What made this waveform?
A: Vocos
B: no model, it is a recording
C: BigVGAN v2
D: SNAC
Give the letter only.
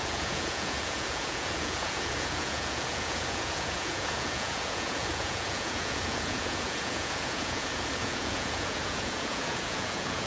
A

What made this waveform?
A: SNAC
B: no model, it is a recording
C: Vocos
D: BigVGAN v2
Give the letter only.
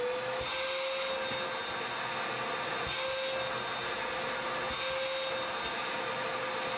B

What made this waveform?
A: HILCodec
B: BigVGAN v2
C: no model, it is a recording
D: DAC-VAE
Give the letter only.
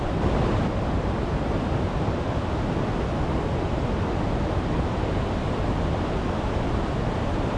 C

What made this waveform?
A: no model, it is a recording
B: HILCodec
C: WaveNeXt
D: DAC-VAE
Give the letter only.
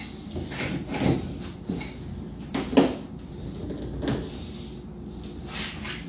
A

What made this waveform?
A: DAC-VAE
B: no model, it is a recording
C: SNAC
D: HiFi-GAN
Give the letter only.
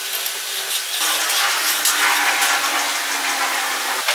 B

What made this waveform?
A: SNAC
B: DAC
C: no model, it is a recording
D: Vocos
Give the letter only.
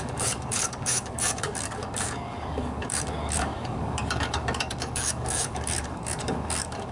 B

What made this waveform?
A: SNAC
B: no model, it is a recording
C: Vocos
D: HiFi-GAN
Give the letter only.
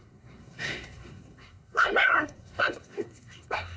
A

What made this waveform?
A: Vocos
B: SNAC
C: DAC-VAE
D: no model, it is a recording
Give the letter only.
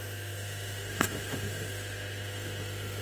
C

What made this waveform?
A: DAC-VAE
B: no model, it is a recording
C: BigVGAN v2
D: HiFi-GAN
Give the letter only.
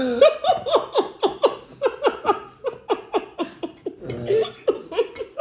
B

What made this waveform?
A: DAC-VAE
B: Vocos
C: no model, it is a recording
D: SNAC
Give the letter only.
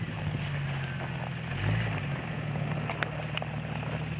C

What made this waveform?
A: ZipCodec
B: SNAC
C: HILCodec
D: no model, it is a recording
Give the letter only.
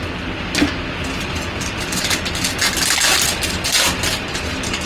D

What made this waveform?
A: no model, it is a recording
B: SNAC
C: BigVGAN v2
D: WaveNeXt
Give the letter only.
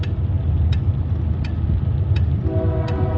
A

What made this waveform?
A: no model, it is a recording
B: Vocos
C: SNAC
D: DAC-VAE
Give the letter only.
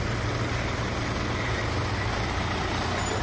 A